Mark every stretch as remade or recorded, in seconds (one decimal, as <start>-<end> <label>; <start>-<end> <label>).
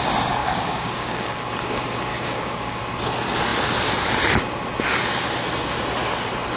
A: 0.0-0.4 recorded; 0.4-1.5 remade; 1.5-2.1 recorded; 2.1-2.8 remade; 2.8-6.6 recorded